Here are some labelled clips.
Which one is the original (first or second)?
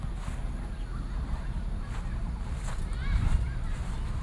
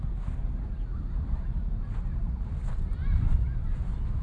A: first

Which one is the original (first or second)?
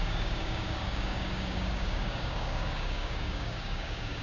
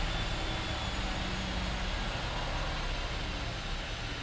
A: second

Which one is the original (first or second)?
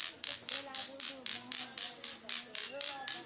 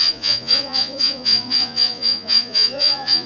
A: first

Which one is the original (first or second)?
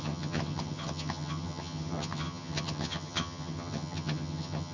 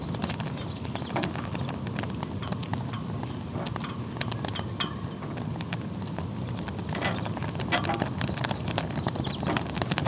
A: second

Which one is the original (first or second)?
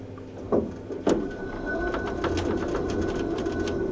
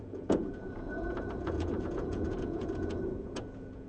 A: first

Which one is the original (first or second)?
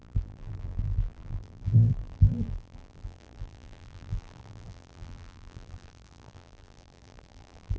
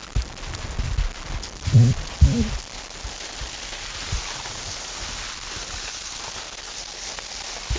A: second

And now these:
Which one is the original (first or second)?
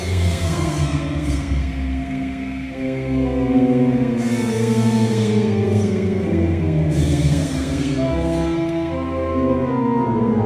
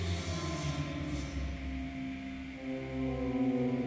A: second